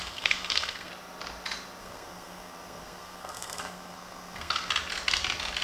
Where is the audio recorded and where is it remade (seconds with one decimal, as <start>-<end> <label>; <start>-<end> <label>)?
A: 0.0-0.9 remade; 0.9-1.8 recorded; 1.8-4.7 remade; 4.7-5.6 recorded